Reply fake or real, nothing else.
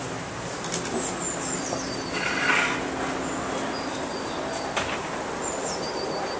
real